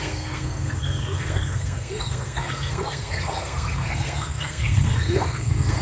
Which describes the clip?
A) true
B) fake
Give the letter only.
B